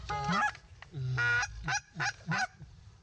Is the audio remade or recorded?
recorded